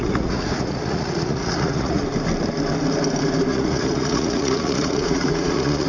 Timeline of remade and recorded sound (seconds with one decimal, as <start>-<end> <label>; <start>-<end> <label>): 0.0-2.0 remade; 2.0-3.5 recorded; 3.5-5.9 remade